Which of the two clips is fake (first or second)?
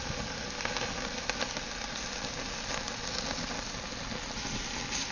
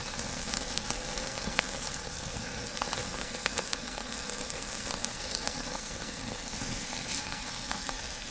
second